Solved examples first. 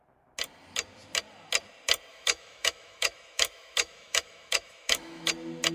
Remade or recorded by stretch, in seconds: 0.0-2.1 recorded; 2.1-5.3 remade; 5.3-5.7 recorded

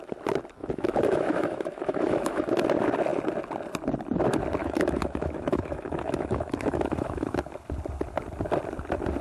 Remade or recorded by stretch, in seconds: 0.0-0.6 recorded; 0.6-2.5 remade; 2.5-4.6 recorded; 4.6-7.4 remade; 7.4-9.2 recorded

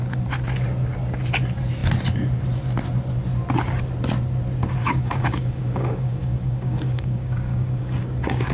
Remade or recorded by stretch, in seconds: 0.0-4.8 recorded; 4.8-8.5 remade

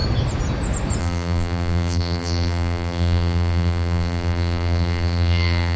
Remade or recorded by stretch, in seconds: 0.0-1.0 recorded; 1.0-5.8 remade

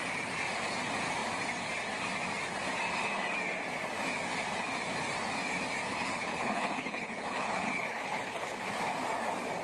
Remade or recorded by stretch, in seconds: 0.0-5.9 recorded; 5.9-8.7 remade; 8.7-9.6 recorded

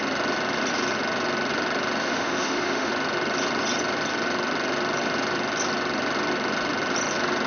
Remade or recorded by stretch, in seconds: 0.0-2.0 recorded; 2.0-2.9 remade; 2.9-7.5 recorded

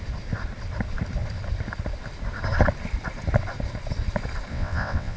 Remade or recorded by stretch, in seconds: 0.0-4.5 recorded; 4.5-5.2 remade

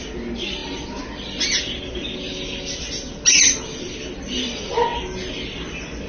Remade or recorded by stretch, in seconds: 0.0-6.1 recorded